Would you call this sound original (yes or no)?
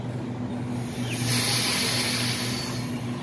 yes